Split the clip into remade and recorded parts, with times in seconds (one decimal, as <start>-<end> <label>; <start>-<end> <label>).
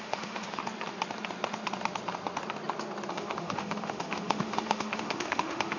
0.0-0.6 remade; 0.6-3.1 recorded; 3.1-5.8 remade